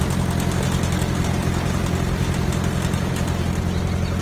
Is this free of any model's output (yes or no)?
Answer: yes